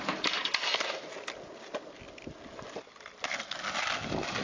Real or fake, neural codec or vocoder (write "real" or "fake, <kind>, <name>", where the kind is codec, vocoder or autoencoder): real